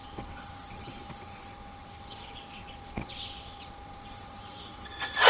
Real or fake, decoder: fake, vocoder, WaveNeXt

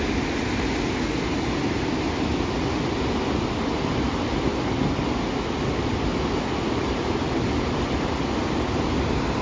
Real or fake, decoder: real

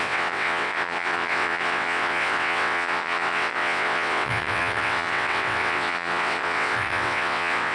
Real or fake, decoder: fake, vocoder, WaveNeXt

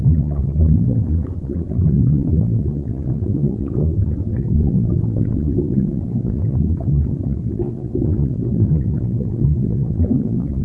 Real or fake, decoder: fake, vocoder, WaveNeXt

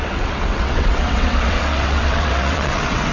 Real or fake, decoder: fake, vocoder, WaveNeXt